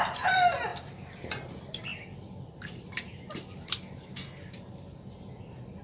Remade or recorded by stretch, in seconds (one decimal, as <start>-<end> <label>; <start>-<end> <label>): 0.0-5.8 recorded